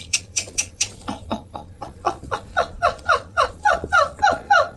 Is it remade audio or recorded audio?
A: remade